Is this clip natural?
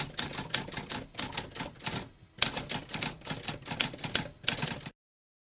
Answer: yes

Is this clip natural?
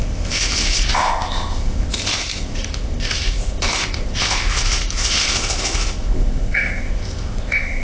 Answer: no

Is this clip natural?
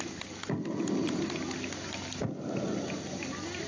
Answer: yes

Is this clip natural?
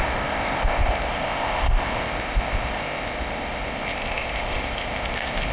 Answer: no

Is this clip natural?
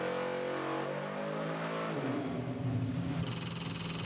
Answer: yes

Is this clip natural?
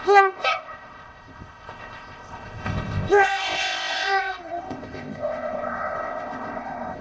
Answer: no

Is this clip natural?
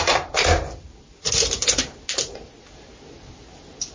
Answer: yes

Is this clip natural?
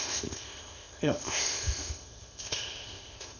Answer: no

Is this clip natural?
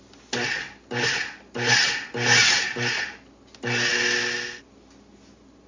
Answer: yes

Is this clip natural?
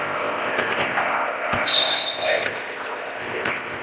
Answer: no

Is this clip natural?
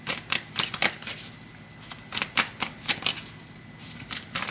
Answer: yes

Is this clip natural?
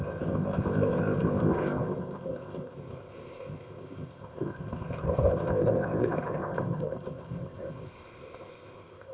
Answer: no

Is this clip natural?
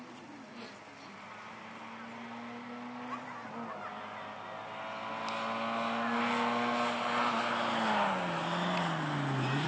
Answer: yes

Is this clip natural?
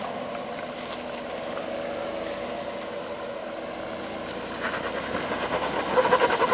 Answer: yes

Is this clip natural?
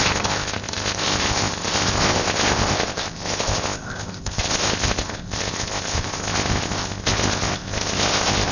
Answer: no